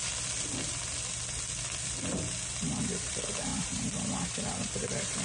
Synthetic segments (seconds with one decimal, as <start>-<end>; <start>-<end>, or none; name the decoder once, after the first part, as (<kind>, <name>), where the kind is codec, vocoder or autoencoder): 3.5-4.7 (vocoder, BigVGAN v2)